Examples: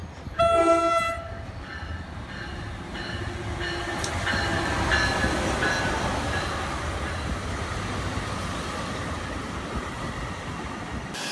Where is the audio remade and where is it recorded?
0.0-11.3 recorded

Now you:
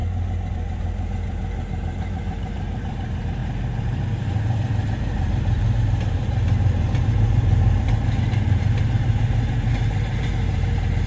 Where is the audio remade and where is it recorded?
0.0-0.5 recorded; 0.5-11.1 remade

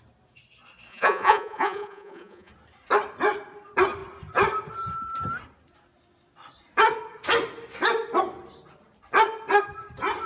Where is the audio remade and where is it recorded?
0.0-0.9 recorded; 0.9-2.5 remade; 2.5-10.3 recorded

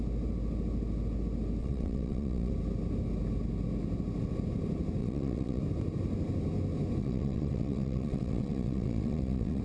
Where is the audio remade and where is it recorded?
0.0-1.6 recorded; 1.6-2.5 remade; 2.5-5.0 recorded; 5.0-5.6 remade; 5.6-7.0 recorded; 7.0-9.6 remade

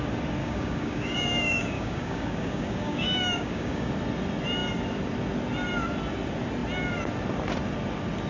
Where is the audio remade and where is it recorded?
0.0-0.4 recorded; 0.4-3.9 remade; 3.9-8.3 recorded